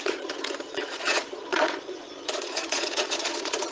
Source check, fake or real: fake